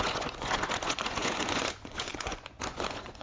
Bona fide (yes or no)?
no